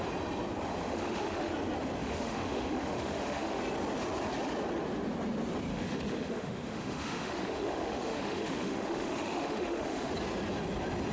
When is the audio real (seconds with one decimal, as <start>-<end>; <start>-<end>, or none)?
0.0-0.8; 1.5-2.0; 3.6-5.7; 10.1-11.1